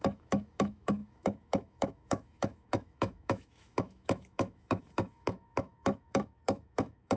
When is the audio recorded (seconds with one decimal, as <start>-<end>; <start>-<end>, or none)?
none